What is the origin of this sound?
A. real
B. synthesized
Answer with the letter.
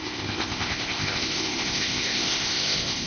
B